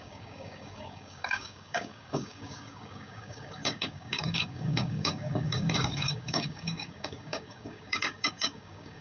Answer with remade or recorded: remade